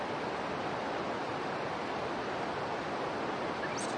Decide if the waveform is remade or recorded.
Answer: recorded